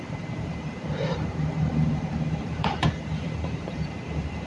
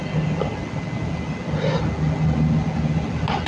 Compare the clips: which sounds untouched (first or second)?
second